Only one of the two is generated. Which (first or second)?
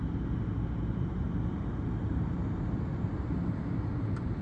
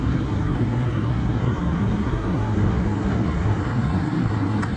second